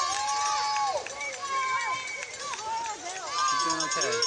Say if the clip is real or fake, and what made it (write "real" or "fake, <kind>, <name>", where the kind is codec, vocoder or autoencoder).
real